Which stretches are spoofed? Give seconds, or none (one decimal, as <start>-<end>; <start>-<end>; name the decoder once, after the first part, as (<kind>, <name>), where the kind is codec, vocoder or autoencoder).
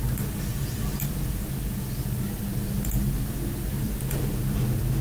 none